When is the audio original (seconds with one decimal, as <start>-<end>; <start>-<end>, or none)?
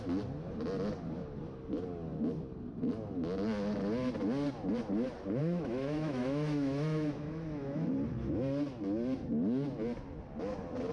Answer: 0.0-5.4; 7.9-10.9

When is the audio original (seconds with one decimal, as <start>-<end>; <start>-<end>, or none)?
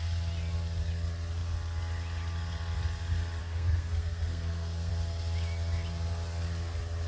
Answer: 0.0-3.4; 4.9-7.1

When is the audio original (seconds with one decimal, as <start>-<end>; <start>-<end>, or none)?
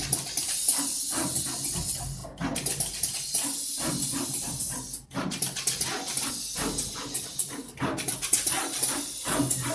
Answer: 0.0-9.7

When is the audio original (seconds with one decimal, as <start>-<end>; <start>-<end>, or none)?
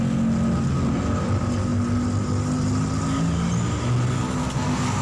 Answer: 0.0-5.0